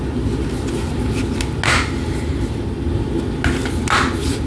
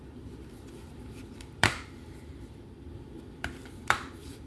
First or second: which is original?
first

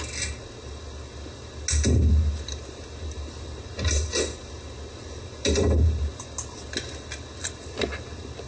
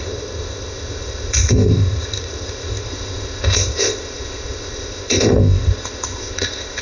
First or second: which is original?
first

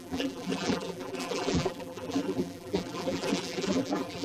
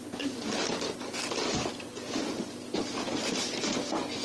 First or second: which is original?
second